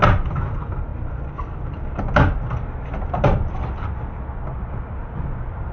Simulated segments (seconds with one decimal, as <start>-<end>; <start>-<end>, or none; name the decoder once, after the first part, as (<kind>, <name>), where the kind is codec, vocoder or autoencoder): none